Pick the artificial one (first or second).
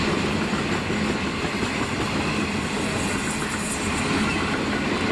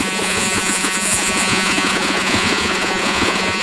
second